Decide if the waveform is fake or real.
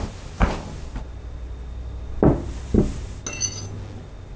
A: real